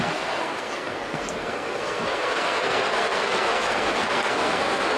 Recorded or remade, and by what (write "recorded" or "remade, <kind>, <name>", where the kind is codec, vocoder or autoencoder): remade, codec, SNAC